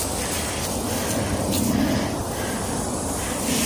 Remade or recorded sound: recorded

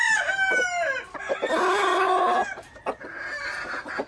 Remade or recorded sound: recorded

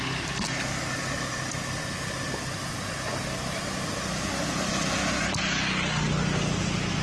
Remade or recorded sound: recorded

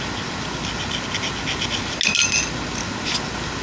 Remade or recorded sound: recorded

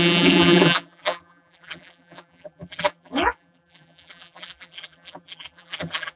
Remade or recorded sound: remade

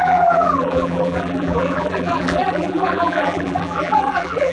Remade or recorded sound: remade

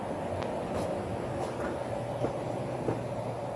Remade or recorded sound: recorded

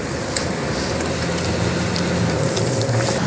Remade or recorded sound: recorded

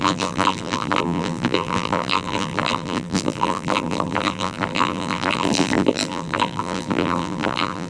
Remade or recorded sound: remade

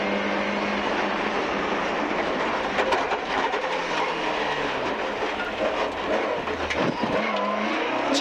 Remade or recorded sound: recorded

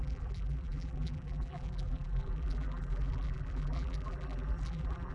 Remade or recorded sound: remade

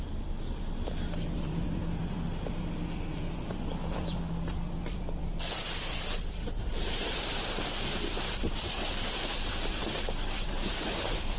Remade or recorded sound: remade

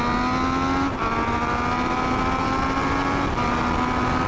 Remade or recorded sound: recorded